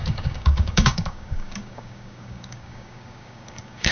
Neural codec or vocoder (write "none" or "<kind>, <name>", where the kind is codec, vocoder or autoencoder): codec, DAC